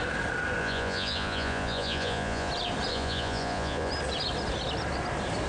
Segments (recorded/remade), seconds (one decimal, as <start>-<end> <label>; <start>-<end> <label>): 0.0-0.6 recorded; 0.6-2.5 remade; 2.5-2.9 recorded; 2.9-3.9 remade; 3.9-5.5 recorded